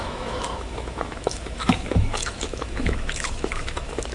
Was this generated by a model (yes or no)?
yes